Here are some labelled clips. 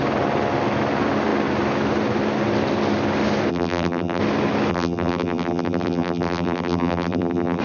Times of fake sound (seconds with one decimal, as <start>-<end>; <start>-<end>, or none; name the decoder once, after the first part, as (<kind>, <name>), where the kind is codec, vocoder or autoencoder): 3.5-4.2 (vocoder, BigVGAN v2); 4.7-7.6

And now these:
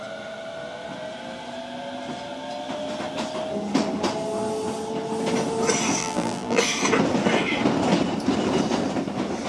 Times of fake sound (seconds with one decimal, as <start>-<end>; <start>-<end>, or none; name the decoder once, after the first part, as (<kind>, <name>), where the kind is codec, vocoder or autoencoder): 6.0-6.6 (vocoder, BigVGAN v2)

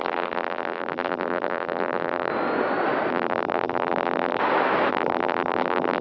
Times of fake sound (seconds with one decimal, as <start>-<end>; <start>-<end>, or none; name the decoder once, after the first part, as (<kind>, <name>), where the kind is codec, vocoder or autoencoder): 0.0-2.3 (vocoder, BigVGAN v2); 3.1-4.4; 4.9-6.0

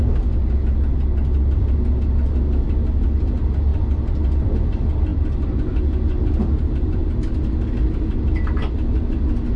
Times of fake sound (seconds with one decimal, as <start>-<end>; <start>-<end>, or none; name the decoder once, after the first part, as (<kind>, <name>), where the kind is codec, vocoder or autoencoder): none